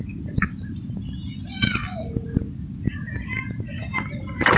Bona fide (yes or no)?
yes